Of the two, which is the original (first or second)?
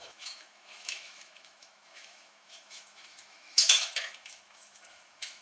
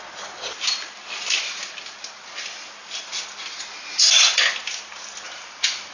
second